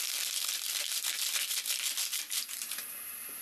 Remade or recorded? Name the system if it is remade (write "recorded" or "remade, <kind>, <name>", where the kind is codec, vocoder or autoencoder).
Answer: recorded